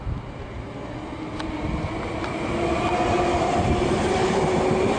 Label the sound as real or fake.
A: real